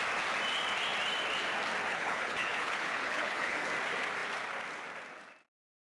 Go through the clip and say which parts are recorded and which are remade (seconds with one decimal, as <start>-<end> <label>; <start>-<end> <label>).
0.0-1.9 recorded; 1.9-3.7 remade; 3.7-5.9 recorded